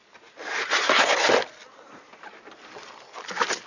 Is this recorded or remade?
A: recorded